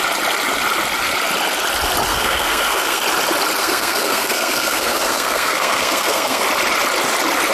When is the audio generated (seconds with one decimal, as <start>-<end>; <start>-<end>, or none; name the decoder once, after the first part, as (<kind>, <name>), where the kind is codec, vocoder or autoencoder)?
2.1-3.0 (codec, SNAC); 3.6-6.4